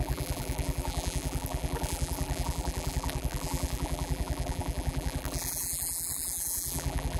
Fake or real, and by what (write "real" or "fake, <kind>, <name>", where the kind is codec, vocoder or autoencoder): fake, vocoder, BigVGAN v2